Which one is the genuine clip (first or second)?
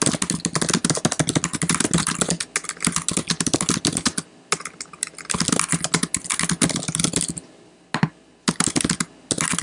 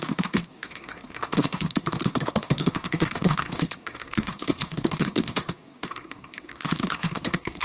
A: first